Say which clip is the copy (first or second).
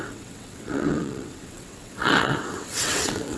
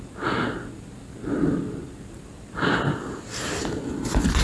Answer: first